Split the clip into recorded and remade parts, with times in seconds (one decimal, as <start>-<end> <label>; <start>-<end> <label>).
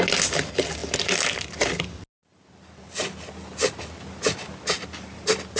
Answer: 0.0-5.6 recorded